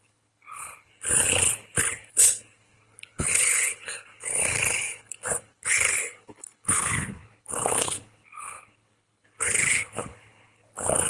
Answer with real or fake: fake